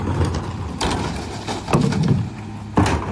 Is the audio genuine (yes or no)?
yes